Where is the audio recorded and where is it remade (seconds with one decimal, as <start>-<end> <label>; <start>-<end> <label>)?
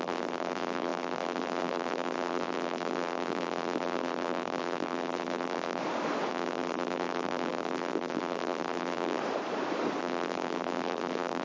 0.0-5.8 remade; 5.8-6.3 recorded; 6.3-9.2 remade; 9.2-10.0 recorded; 10.0-11.4 remade